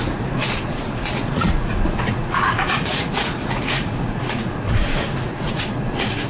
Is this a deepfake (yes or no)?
yes